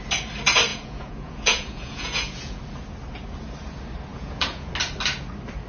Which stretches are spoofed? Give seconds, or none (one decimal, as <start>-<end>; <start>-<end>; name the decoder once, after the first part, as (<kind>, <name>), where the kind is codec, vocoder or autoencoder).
0.7-2.6 (vocoder, Vocos); 4.1-4.7